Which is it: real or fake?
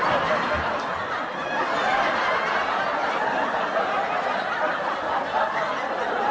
real